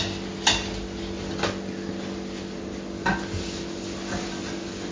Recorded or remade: recorded